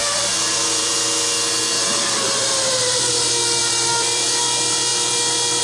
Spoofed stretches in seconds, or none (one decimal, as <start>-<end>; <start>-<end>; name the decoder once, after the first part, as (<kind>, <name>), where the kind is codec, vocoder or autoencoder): 0.0-0.9 (vocoder, BigVGAN v2); 1.7-3.0; 3.6-4.4

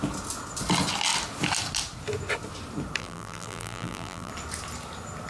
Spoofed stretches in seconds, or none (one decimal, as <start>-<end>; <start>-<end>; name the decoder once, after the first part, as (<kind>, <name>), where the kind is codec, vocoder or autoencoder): 3.0-4.3 (vocoder, BigVGAN v2)

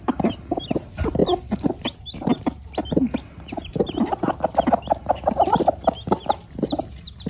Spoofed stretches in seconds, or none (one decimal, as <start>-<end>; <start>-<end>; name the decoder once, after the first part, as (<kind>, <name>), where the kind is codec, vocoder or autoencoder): none

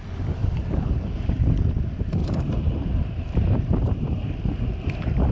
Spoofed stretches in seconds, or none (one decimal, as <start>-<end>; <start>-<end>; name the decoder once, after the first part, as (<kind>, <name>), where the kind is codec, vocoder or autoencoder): 0.4-1.5 (vocoder, BigVGAN v2); 2.2-4.2